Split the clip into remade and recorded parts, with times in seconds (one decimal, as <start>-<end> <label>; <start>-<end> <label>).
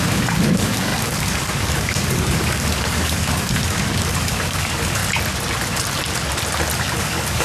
0.0-5.0 remade; 5.0-6.8 recorded; 6.8-7.4 remade